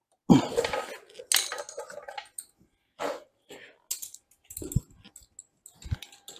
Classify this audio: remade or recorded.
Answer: recorded